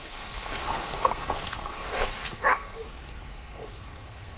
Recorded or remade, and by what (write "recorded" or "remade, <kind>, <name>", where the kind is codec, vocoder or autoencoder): remade, codec, SNAC